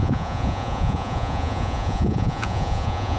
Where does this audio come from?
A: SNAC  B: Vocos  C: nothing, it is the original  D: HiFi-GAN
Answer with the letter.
B